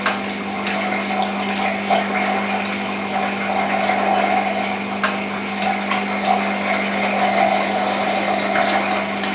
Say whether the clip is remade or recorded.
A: recorded